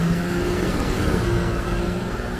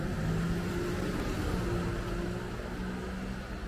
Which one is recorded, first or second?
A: second